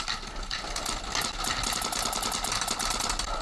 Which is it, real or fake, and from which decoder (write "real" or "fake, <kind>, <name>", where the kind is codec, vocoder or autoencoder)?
real